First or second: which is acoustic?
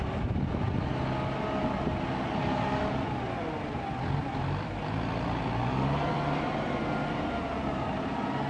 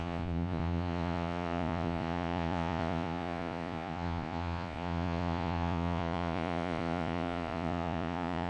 first